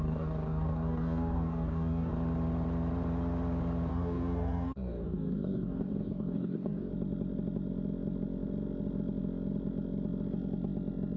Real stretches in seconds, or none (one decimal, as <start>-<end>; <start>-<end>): 2.1-3.9; 6.9-11.2